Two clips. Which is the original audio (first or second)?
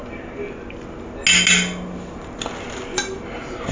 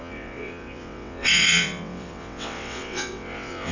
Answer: first